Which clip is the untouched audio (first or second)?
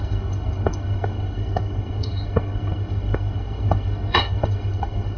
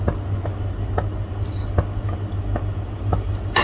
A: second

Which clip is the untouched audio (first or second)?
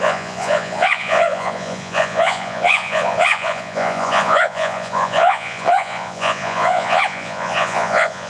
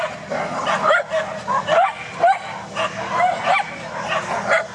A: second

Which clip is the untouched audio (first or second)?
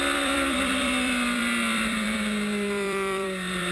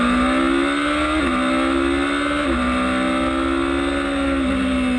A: second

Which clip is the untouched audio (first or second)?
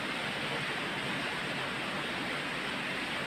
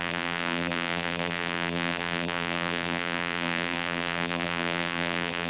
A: first